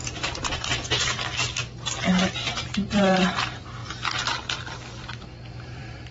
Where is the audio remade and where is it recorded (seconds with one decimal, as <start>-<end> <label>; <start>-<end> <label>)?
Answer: 0.0-2.9 recorded; 2.9-3.8 remade; 3.8-5.5 recorded; 5.5-6.1 remade